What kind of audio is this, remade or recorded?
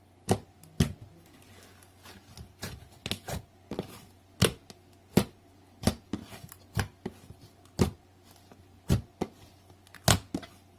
recorded